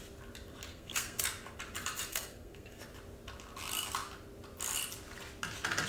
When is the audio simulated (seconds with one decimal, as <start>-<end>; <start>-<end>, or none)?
0.7-1.2; 2.1-2.8